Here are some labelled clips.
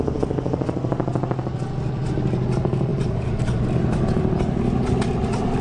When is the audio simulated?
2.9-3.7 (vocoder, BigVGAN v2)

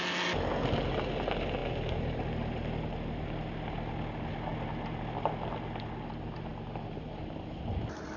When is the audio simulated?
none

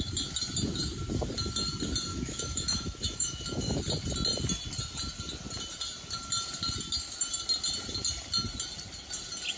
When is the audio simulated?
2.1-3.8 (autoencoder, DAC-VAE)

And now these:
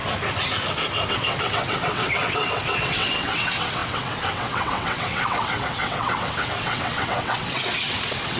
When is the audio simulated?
1.1-8.4 (vocoder, WaveNeXt)

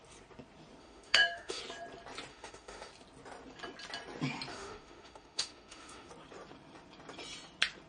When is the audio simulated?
0.8-1.6 (autoencoder, DAC-VAE); 2.3-2.9; 4.5-6.1

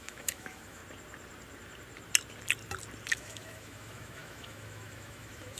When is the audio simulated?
0.0-0.8 (autoencoder, DAC-VAE); 3.1-5.6

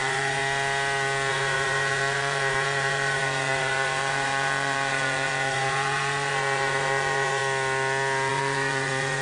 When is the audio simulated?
0.0-0.4 (vocoder, Vocos); 1.3-7.4; 8.3-9.2